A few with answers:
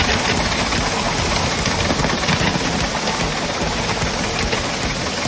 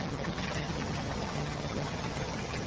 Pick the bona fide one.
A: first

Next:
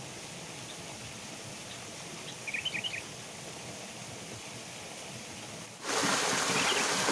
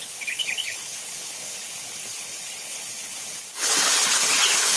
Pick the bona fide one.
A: first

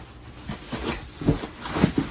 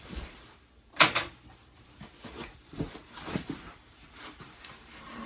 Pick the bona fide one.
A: first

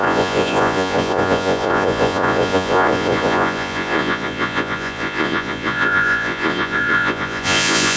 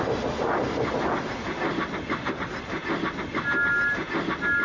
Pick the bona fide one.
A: second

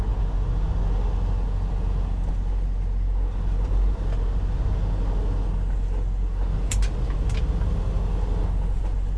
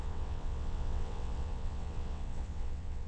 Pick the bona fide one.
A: first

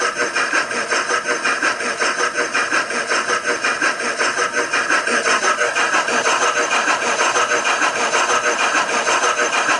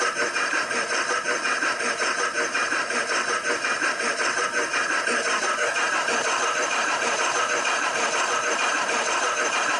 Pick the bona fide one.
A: first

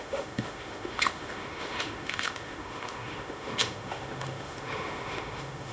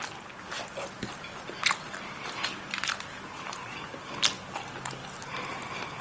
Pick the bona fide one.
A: second